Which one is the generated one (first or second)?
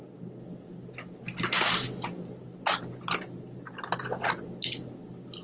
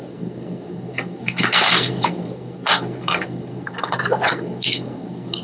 second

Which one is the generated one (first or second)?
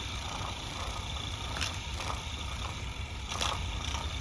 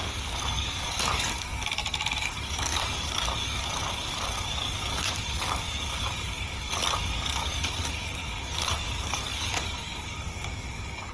second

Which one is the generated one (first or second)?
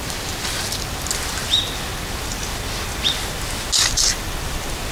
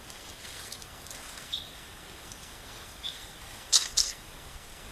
second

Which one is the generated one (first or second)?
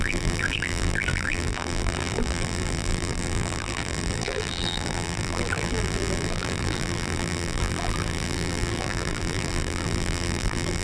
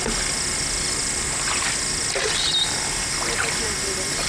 first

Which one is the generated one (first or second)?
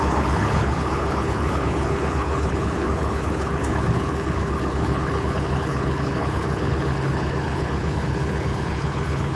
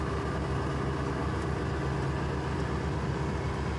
first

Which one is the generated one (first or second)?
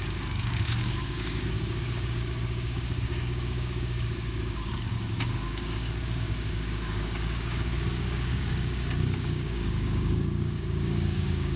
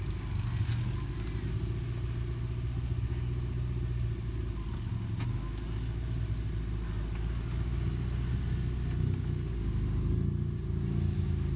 first